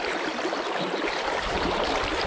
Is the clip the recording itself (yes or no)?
yes